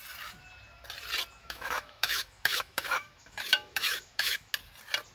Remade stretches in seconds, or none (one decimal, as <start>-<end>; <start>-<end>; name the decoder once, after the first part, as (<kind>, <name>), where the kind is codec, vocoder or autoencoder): 1.4-4.5 (autoencoder, DAC-VAE)